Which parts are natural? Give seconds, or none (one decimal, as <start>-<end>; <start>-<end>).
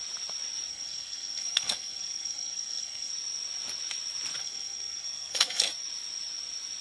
0.0-0.7; 3.1-4.4; 5.7-6.8